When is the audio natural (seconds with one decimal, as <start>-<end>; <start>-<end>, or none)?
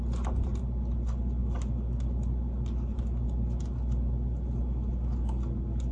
0.0-5.9